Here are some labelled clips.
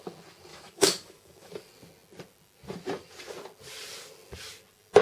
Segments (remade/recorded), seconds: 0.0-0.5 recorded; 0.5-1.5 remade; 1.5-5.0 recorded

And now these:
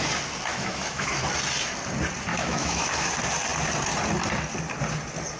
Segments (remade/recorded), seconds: 0.0-0.5 recorded; 0.5-1.1 remade; 1.1-2.3 recorded; 2.3-3.1 remade; 3.1-5.4 recorded

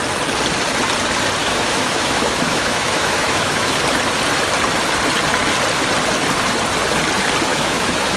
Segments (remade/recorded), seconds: 0.0-1.4 recorded; 1.4-3.8 remade; 3.8-7.5 recorded; 7.5-8.2 remade

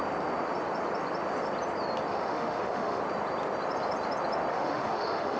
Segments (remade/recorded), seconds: 0.0-2.1 recorded; 2.1-3.0 remade; 3.0-4.5 recorded; 4.5-5.4 remade

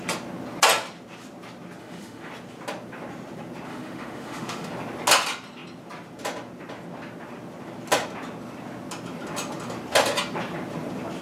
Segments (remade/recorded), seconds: 0.0-1.8 recorded; 1.8-2.3 remade; 2.3-3.7 recorded; 3.7-4.7 remade; 4.7-11.2 recorded

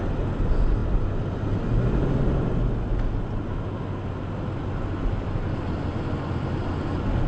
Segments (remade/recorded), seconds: 0.0-7.3 recorded

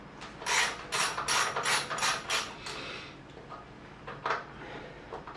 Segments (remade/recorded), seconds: 0.0-5.4 recorded